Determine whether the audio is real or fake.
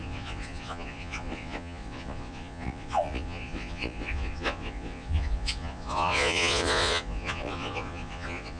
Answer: fake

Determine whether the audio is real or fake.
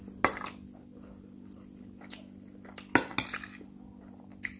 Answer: real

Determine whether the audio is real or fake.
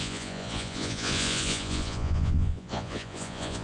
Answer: fake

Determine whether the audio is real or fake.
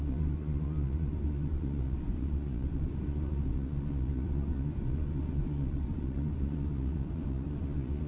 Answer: fake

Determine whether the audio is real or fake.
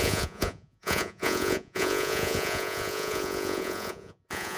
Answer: fake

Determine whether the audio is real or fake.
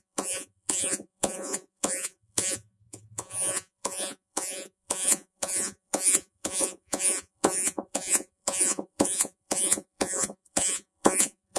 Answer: fake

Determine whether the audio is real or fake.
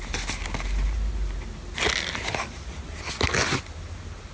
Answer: real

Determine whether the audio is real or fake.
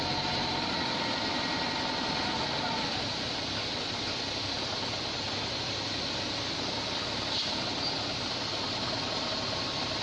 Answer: real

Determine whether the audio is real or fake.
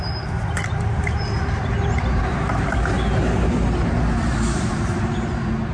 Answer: real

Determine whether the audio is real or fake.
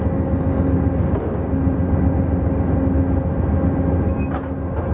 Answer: real